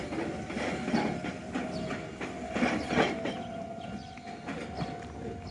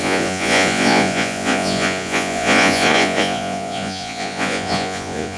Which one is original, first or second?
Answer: first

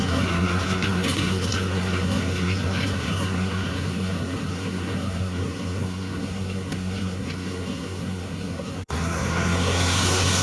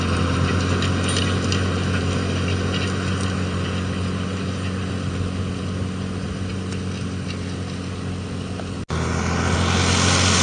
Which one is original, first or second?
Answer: second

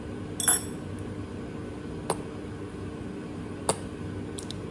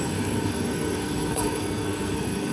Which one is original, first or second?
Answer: first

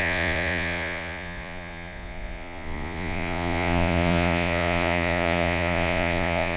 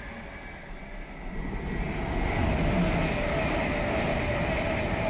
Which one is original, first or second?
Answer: second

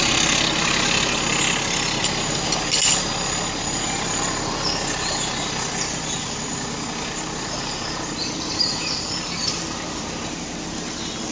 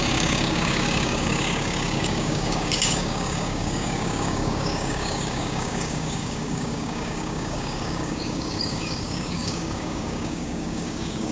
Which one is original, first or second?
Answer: first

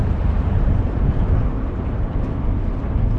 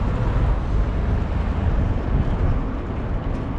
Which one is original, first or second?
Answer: second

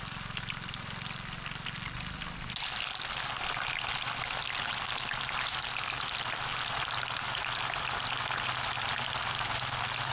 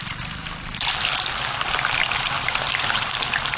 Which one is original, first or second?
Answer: first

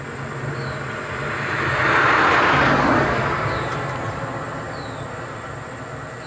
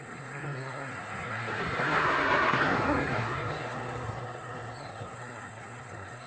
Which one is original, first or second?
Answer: first